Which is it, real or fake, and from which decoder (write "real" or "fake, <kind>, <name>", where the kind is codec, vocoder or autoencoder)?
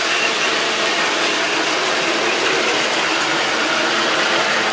fake, vocoder, BigVGAN v2